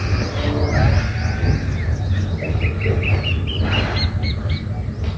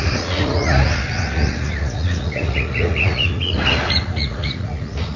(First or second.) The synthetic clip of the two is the second